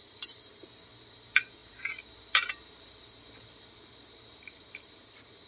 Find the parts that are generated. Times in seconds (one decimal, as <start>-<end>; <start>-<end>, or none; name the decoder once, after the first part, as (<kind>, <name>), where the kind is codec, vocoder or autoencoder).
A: 0.0-0.6 (vocoder, BigVGAN v2); 1.1-5.5